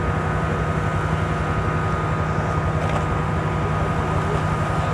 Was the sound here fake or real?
real